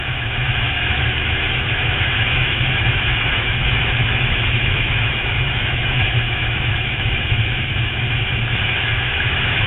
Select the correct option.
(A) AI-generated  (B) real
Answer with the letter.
A